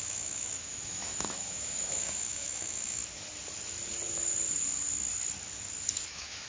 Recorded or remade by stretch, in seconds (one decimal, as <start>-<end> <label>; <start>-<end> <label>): 0.0-3.0 remade; 3.0-5.9 recorded; 5.9-6.5 remade